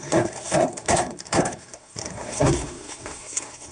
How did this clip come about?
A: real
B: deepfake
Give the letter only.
B